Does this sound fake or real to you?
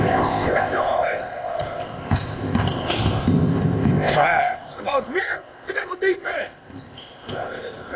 fake